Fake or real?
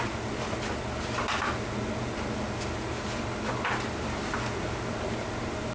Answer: real